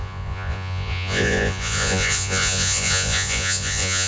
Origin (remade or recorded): remade